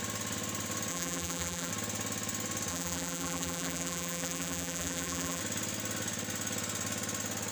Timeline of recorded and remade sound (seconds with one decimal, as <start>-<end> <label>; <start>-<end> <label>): 0.0-0.9 recorded; 0.9-1.7 remade; 1.7-2.7 recorded; 2.7-5.4 remade; 5.4-7.5 recorded